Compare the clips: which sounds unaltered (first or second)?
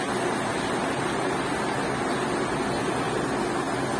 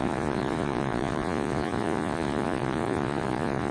first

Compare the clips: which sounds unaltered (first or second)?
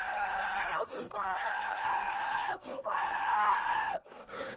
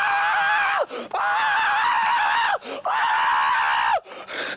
second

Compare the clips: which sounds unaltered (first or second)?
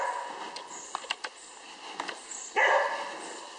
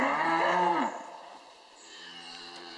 first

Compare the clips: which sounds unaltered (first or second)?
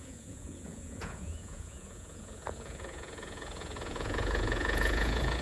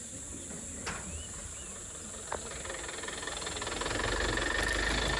second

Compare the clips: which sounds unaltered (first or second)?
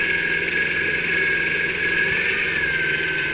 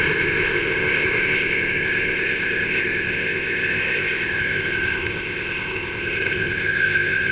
first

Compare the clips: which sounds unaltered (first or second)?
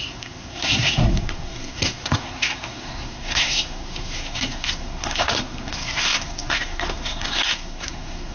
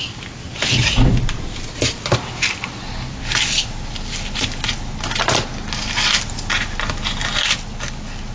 second